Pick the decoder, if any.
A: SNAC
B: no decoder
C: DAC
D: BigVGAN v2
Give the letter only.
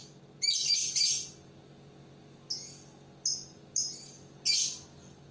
B